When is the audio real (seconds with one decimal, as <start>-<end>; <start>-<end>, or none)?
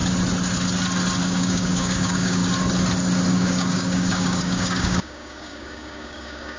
0.0-1.2; 2.4-3.3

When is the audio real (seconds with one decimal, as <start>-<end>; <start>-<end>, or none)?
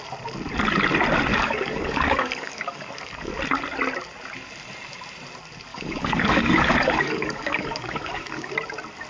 0.0-1.3; 3.4-5.7; 8.5-9.1